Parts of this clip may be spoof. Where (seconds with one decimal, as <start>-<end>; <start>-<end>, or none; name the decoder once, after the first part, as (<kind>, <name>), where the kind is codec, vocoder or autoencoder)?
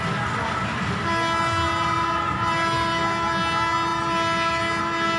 none